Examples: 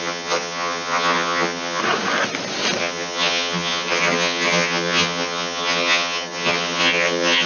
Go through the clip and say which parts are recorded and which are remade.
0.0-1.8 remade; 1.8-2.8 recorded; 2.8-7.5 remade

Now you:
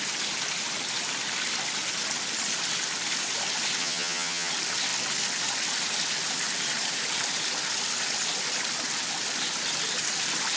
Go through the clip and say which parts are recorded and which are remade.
0.0-3.8 recorded; 3.8-4.5 remade; 4.5-10.6 recorded

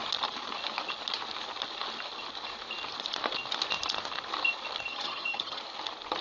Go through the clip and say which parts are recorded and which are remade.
0.0-4.9 recorded; 4.9-5.6 remade; 5.6-6.2 recorded

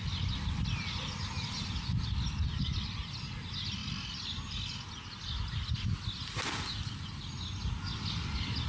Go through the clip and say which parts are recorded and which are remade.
0.0-8.7 recorded

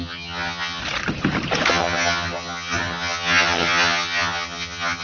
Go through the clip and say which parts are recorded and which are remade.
0.0-0.8 remade; 0.8-1.7 recorded; 1.7-5.0 remade

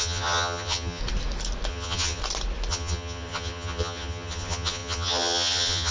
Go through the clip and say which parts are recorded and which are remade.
0.0-1.0 remade; 1.0-1.7 recorded; 1.7-2.2 remade; 2.2-2.7 recorded; 2.7-5.9 remade

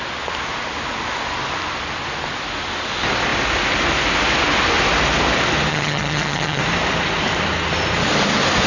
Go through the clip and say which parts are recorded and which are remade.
0.0-5.7 recorded; 5.7-6.6 remade; 6.6-8.7 recorded

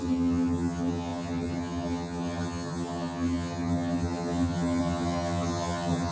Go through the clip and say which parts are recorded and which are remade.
0.0-6.1 remade